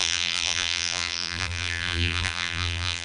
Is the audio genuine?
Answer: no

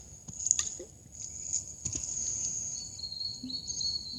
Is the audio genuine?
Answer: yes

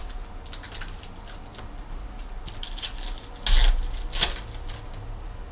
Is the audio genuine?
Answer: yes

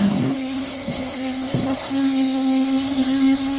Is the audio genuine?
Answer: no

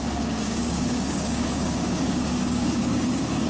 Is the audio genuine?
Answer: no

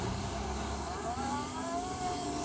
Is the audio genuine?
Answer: no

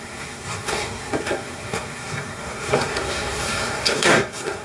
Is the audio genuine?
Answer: no